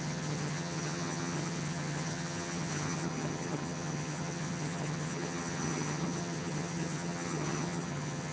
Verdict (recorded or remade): remade